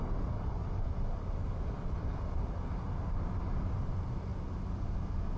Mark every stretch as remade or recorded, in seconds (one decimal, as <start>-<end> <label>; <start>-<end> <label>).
0.0-5.4 recorded